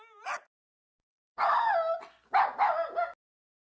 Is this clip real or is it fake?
real